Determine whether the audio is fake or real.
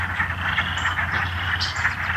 real